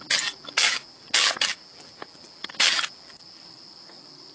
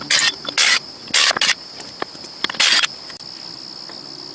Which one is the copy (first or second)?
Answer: first